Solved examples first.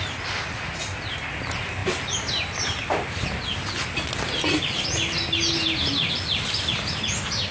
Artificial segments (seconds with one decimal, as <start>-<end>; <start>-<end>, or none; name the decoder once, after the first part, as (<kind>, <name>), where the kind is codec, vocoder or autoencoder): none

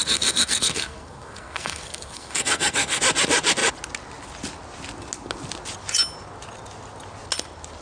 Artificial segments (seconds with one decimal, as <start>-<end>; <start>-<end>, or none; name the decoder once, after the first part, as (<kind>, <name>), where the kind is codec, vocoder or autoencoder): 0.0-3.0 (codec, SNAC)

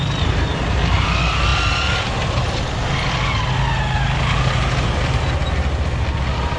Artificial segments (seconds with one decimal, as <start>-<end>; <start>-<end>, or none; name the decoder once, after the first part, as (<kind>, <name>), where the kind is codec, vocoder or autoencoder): none

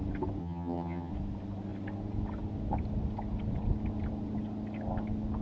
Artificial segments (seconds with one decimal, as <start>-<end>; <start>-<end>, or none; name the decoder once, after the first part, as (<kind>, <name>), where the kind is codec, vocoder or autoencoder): 0.4-1.1 (vocoder, HiFi-GAN)